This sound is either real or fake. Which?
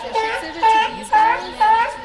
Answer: real